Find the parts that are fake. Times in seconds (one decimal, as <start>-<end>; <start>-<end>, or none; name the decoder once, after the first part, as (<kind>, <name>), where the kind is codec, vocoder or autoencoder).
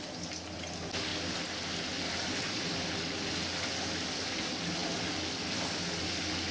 none